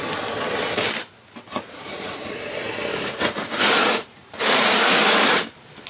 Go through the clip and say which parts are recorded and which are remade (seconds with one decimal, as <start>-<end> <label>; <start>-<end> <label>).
0.0-1.5 recorded; 1.5-2.4 remade; 2.4-2.9 recorded; 2.9-5.0 remade; 5.0-5.9 recorded